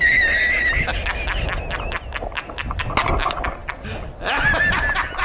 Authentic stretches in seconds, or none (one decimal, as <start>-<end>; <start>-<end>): 0.0-5.2